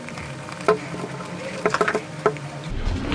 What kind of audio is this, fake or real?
real